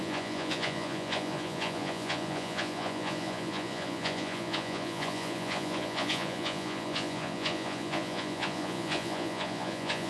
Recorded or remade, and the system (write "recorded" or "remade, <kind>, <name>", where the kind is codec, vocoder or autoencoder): remade, vocoder, Vocos